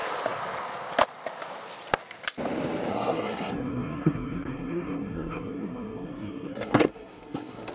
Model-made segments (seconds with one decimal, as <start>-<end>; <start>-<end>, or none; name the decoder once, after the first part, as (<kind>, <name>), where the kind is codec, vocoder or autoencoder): 2.9-7.7 (codec, SNAC)